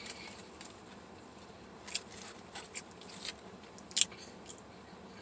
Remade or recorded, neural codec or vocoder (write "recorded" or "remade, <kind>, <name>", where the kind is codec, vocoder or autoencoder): recorded